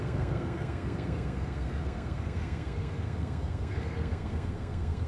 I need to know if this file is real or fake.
fake